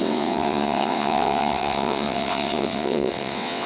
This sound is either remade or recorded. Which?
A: remade